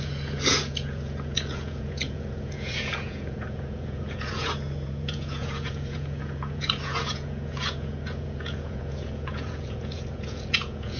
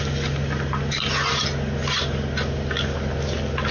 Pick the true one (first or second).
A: second